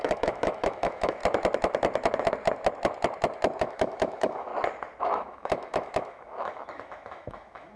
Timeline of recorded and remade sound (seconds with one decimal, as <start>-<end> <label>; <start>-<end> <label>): 0.0-1.2 remade; 1.2-3.6 recorded; 3.6-4.5 remade; 4.5-5.0 recorded; 5.0-7.8 remade